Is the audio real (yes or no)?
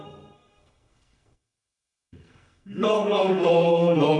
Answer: no